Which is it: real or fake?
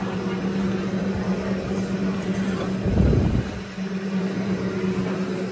real